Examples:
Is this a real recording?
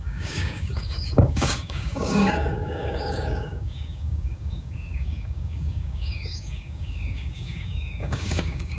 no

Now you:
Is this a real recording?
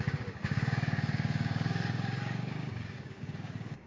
no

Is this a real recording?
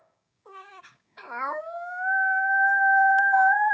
no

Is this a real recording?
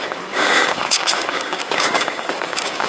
no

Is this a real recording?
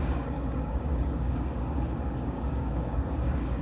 no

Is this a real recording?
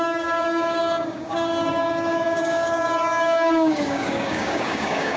no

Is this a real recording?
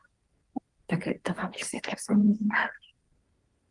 no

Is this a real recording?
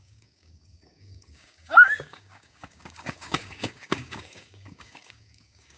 no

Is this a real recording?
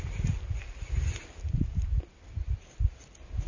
yes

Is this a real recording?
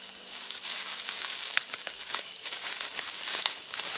no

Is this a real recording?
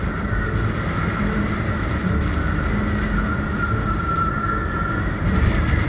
yes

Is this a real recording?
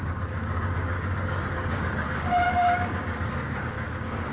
no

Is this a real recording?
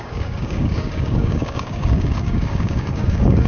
no